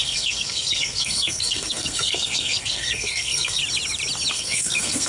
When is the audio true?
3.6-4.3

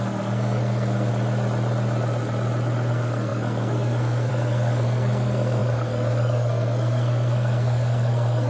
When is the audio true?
1.1-2.9

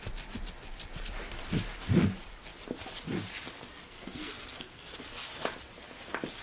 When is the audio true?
0.0-3.8; 5.0-6.4

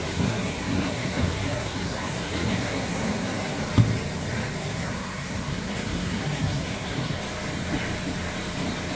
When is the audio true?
3.6-4.6; 7.2-9.0